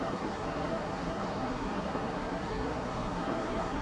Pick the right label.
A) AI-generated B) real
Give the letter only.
A